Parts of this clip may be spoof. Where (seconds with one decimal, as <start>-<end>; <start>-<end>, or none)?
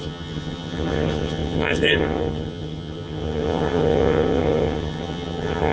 0.0-5.7